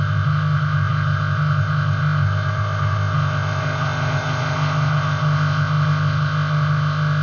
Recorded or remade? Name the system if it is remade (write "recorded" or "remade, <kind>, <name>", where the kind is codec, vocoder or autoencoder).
remade, codec, ZipCodec